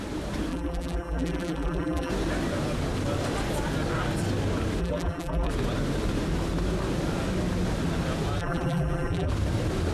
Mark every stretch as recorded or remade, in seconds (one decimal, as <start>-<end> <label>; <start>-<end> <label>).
0.0-0.5 recorded; 0.5-2.1 remade; 2.1-4.8 recorded; 4.8-5.5 remade; 5.5-8.4 recorded; 8.4-9.3 remade; 9.3-9.9 recorded

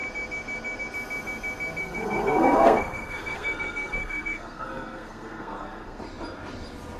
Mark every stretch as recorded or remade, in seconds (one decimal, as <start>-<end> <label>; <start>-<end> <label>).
0.0-1.8 recorded; 1.8-6.0 remade; 6.0-7.0 recorded

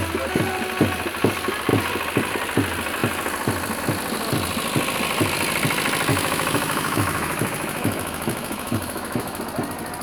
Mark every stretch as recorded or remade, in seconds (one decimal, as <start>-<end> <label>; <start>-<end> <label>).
0.0-6.1 recorded; 6.1-9.4 remade; 9.4-10.0 recorded